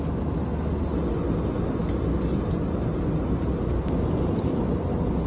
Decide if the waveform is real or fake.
real